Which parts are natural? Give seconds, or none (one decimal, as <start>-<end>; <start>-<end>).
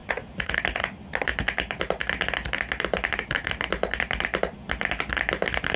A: 0.6-5.8